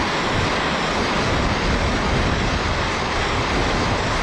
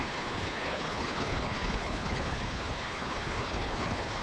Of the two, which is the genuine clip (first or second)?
first